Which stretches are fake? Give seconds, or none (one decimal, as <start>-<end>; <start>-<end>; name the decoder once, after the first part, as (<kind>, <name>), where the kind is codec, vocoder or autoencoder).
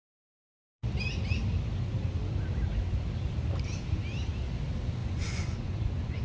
5.0-6.2 (vocoder, Vocos)